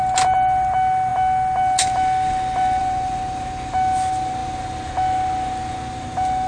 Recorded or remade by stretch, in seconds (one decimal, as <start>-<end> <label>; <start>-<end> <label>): 0.0-6.5 recorded